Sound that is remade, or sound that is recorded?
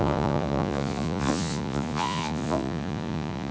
remade